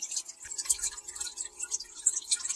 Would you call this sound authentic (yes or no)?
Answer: yes